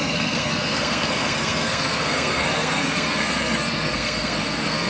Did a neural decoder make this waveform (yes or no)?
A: yes